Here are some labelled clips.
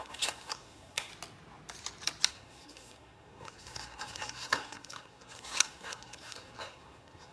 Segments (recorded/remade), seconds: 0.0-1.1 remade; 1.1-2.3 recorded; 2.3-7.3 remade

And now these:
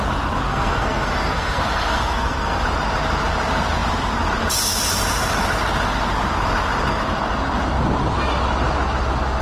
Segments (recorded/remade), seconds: 0.0-0.5 recorded; 0.5-2.6 remade; 2.6-9.4 recorded

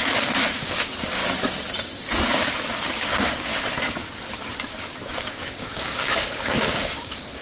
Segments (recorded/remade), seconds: 0.0-1.2 remade; 1.2-2.9 recorded; 2.9-3.5 remade; 3.5-5.1 recorded; 5.1-7.4 remade

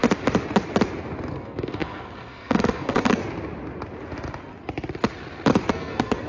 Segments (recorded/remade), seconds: 0.0-1.3 recorded; 1.3-3.2 remade; 3.2-5.7 recorded; 5.7-6.3 remade